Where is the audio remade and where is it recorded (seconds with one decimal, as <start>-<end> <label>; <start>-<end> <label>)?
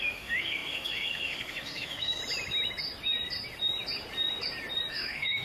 0.0-2.2 remade; 2.2-4.9 recorded; 4.9-5.4 remade